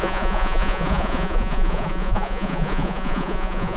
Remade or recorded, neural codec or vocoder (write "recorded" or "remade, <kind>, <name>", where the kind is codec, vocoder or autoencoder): remade, vocoder, Vocos